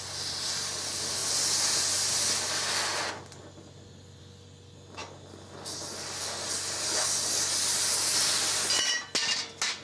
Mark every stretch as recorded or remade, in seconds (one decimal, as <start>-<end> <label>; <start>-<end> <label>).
0.0-9.8 recorded